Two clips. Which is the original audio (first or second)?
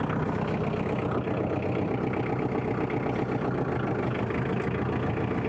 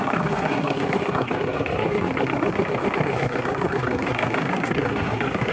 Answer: first